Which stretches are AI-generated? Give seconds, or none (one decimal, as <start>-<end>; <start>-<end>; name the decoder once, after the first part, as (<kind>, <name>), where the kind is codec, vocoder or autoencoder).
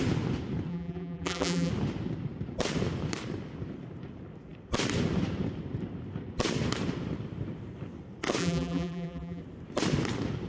0.7-1.7 (vocoder, BigVGAN v2); 8.4-9.4